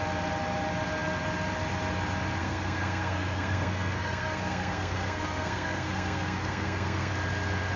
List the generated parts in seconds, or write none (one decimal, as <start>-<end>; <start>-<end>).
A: 2.4-7.1